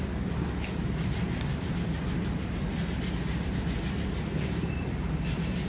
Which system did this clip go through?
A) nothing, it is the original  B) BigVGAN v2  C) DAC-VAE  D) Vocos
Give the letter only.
B